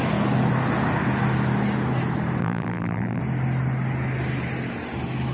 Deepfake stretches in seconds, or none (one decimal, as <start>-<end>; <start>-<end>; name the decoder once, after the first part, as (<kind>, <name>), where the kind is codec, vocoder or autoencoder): 2.4-3.2 (vocoder, BigVGAN v2)

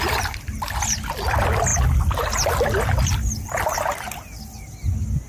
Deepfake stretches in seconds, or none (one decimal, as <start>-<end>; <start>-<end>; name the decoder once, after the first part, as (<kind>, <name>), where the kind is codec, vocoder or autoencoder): none

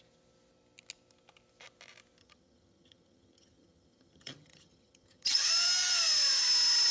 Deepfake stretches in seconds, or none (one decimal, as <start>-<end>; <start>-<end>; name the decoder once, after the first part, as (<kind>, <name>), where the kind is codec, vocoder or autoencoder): 2.2-5.5 (vocoder, HiFi-GAN)

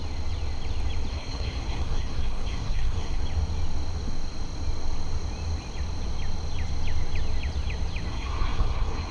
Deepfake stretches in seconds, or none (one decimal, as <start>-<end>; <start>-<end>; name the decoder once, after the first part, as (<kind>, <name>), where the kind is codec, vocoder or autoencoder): 1.1-3.2 (codec, SNAC); 8.1-9.1

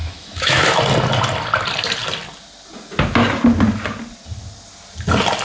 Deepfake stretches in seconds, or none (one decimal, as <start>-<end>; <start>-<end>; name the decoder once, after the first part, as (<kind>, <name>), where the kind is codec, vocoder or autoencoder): 0.0-0.8 (autoencoder, DAC-VAE)

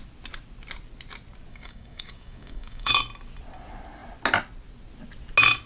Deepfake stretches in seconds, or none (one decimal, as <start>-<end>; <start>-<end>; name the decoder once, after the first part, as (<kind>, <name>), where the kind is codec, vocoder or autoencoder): 1.5-2.9 (codec, DAC)